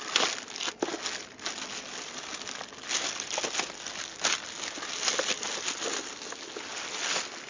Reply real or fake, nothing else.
real